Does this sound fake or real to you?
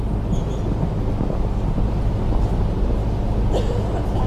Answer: real